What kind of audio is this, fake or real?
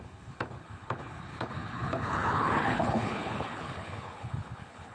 fake